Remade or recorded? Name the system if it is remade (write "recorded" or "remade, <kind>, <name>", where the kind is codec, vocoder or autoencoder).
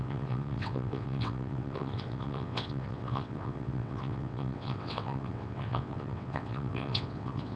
remade, vocoder, WaveNeXt